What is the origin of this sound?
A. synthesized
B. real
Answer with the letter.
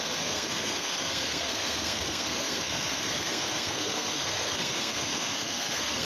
A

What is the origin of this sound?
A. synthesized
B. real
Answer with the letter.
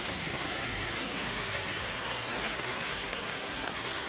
A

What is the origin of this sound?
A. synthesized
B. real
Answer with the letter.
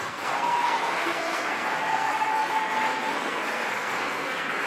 A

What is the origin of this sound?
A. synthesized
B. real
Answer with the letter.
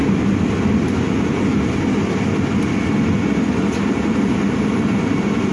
B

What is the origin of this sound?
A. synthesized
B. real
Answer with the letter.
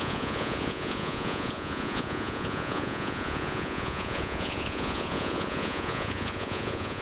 A